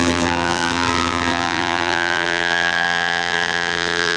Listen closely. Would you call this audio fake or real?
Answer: fake